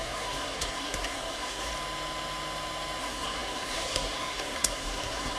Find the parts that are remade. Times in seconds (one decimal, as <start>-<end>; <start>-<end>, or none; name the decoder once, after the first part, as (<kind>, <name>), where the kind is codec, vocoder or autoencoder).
0.0-1.7 (codec, SNAC); 3.0-5.4